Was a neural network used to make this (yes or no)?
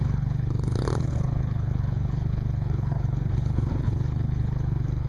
yes